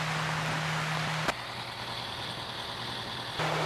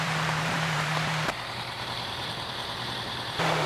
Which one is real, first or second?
first